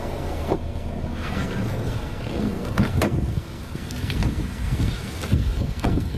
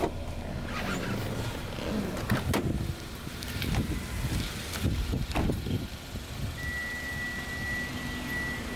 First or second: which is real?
second